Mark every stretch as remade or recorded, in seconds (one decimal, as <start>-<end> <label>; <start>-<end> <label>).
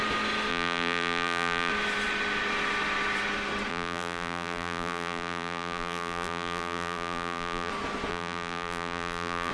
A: 0.0-0.5 recorded; 0.5-1.7 remade; 1.7-3.7 recorded; 3.7-7.7 remade; 7.7-8.1 recorded; 8.1-9.5 remade